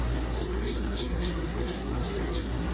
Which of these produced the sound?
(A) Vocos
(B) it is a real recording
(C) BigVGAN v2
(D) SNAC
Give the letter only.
D